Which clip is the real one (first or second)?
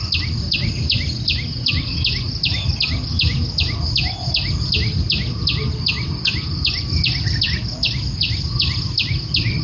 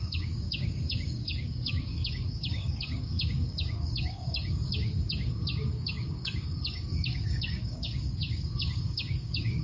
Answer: first